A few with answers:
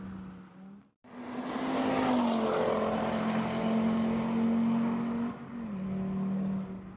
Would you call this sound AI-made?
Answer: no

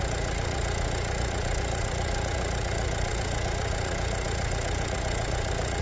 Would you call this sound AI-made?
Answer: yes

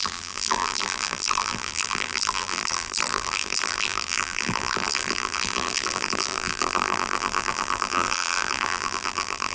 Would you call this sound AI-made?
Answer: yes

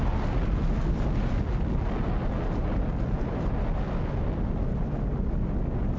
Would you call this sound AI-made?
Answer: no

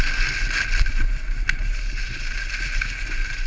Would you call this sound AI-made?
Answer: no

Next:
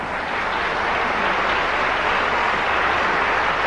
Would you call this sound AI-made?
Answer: yes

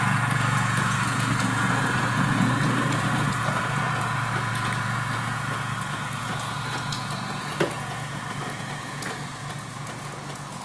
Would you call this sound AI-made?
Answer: yes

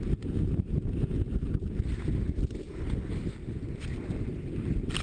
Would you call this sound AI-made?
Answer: no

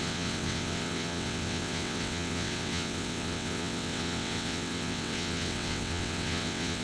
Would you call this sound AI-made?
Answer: yes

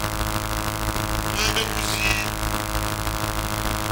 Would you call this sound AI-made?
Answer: no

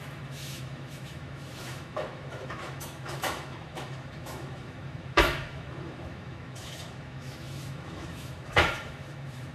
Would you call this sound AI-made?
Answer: yes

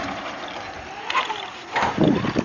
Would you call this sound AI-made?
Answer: no